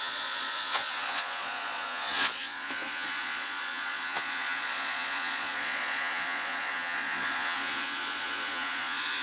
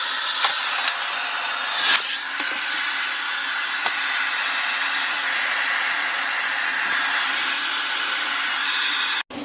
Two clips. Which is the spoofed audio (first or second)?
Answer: first